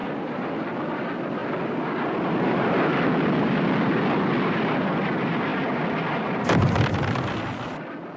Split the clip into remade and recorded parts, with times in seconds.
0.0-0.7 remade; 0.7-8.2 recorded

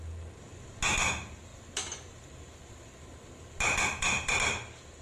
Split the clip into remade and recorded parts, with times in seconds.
0.0-5.0 recorded

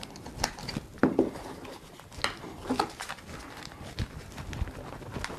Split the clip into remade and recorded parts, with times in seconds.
0.0-5.4 recorded

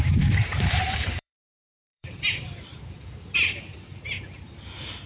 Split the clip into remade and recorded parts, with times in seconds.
0.0-0.5 recorded; 0.5-3.6 remade; 3.6-5.1 recorded

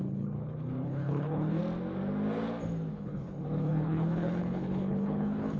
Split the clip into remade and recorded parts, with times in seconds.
0.0-1.6 remade; 1.6-2.9 recorded; 2.9-5.6 remade

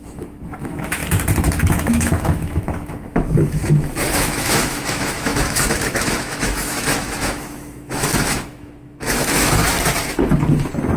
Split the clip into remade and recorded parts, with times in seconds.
0.0-1.0 remade; 1.0-1.7 recorded; 1.7-9.6 remade; 9.6-11.0 recorded

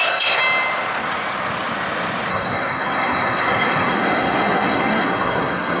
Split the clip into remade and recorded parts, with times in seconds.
0.0-0.4 remade; 0.4-2.3 recorded; 2.3-5.8 remade

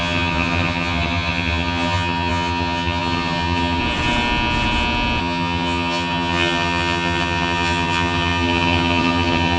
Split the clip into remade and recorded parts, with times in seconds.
0.0-3.8 remade; 3.8-5.2 recorded; 5.2-9.6 remade